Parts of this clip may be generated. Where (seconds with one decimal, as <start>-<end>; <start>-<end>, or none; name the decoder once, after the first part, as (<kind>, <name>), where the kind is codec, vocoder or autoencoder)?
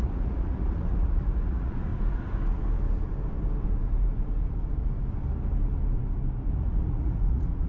0.0-1.9 (vocoder, Vocos); 6.5-7.7